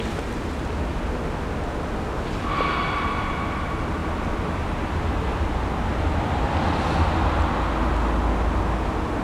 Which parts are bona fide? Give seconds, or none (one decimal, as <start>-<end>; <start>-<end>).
0.0-5.9; 6.5-9.2